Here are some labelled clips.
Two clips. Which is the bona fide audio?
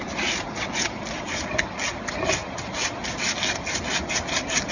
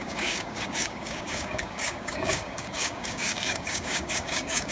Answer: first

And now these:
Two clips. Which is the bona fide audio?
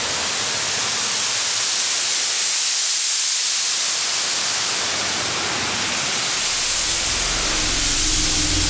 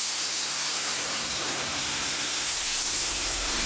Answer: first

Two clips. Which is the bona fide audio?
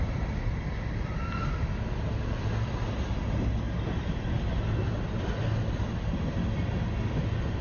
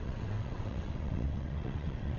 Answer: first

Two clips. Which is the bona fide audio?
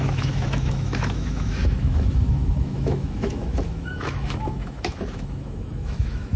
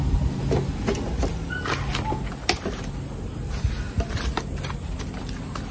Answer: second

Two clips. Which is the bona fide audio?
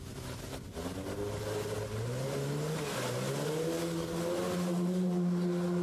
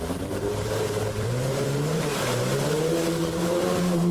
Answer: first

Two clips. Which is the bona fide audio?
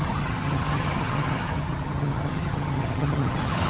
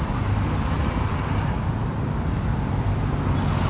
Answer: second